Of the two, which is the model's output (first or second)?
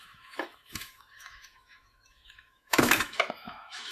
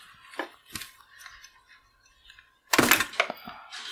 first